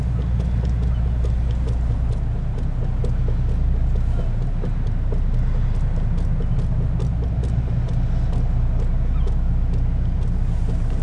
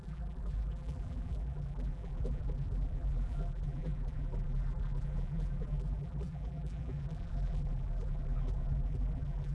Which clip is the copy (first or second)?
second